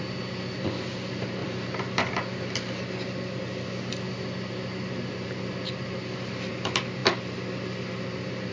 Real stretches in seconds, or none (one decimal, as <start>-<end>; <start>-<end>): 0.0-8.5